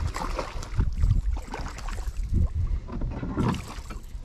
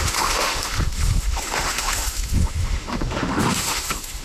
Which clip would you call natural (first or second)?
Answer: first